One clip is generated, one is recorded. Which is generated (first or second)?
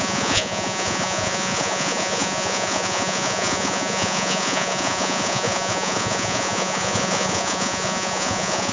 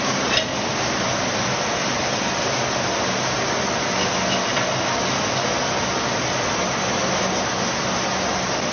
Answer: first